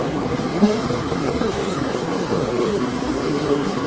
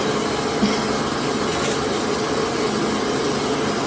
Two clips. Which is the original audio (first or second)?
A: second